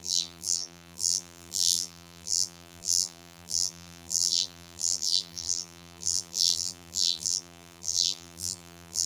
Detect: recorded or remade remade